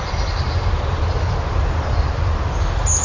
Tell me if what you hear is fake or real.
real